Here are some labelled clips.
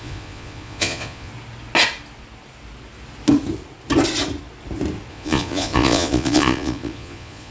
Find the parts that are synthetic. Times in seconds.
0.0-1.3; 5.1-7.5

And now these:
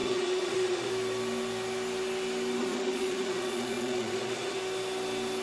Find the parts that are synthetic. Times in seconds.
0.0-0.9; 2.6-4.6

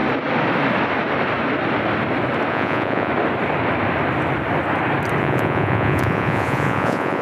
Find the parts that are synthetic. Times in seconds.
2.5-3.1; 5.2-7.2

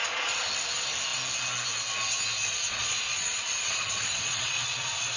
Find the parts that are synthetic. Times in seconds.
0.0-0.5; 2.4-5.2

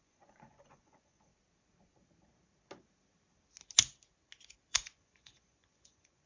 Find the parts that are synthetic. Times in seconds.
0.0-1.3; 4.7-6.3